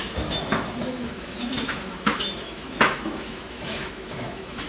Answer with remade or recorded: remade